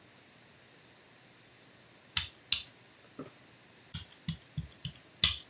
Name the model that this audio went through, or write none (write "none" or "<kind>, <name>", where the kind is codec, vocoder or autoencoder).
none